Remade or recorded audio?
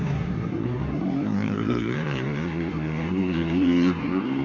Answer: remade